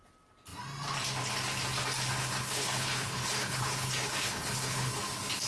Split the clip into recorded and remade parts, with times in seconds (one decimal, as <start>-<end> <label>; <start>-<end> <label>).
0.0-2.2 recorded; 2.2-4.9 remade; 4.9-5.5 recorded